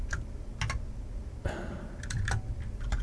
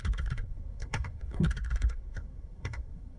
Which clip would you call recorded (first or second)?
first